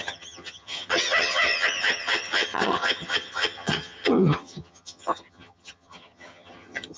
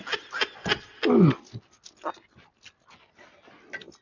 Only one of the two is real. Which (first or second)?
second